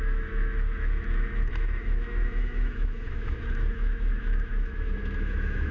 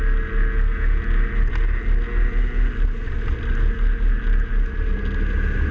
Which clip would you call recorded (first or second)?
second